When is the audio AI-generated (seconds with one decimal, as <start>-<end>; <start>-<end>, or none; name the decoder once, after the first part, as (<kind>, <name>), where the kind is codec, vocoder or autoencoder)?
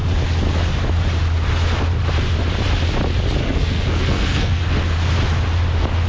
3.4-4.6 (codec, SNAC)